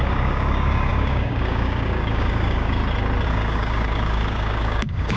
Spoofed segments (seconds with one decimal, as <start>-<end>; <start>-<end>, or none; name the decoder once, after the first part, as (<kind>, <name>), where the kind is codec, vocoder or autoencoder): 0.0-2.8 (codec, DAC); 3.3-5.2